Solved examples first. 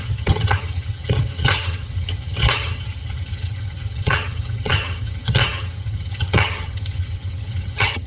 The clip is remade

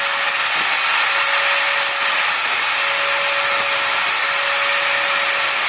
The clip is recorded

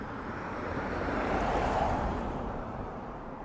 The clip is remade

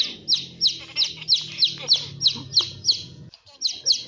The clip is recorded